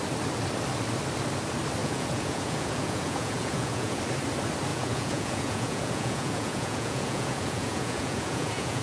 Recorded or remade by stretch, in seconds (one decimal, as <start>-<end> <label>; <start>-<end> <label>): 0.0-1.8 recorded; 1.8-4.0 remade; 4.0-4.7 recorded; 4.7-8.8 remade